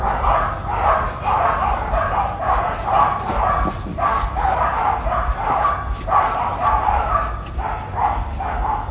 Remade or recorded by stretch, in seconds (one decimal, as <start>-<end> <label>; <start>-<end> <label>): 0.0-0.7 recorded; 0.7-1.3 remade; 1.3-3.9 recorded; 3.9-7.6 remade; 7.6-8.9 recorded

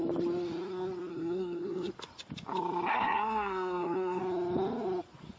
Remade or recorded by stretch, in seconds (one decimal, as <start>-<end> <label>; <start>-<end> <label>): 0.0-1.1 recorded; 1.1-1.9 remade; 1.9-2.9 recorded; 2.9-4.2 remade; 4.2-5.4 recorded

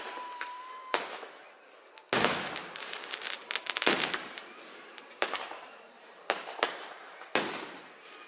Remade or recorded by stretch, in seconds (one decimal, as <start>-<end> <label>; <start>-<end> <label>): 0.0-2.6 recorded; 2.6-7.1 remade; 7.1-8.3 recorded